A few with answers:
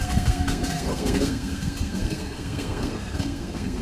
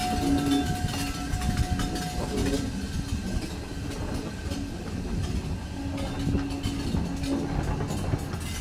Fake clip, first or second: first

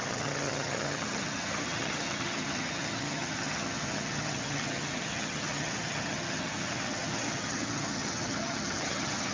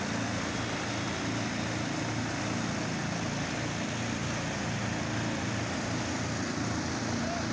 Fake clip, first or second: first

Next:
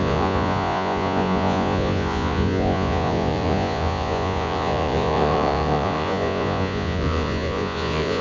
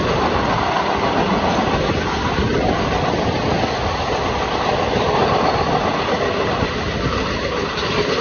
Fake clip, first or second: first